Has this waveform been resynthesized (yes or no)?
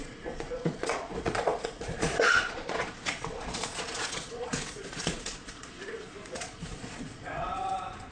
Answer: yes